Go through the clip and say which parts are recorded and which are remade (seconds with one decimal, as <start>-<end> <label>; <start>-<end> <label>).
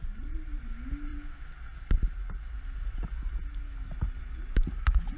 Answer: 0.0-0.6 remade; 0.6-5.2 recorded